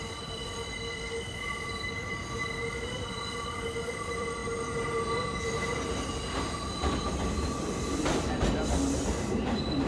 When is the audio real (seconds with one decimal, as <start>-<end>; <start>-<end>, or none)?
2.1-2.7; 4.4-9.3